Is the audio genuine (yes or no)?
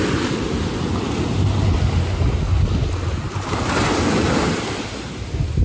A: yes